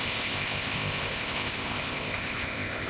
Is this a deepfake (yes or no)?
yes